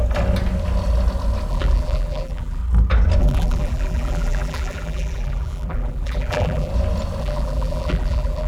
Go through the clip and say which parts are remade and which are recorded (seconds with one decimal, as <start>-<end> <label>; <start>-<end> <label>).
0.0-1.5 recorded; 1.5-2.6 remade; 2.6-3.2 recorded; 3.2-6.7 remade; 6.7-7.2 recorded; 7.2-8.5 remade